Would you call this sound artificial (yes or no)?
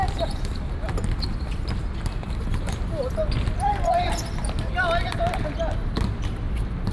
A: no